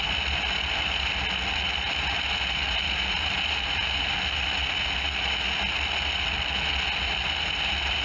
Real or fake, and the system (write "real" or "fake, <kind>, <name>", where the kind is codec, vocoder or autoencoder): real